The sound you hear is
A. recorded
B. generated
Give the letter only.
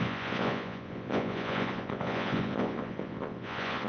B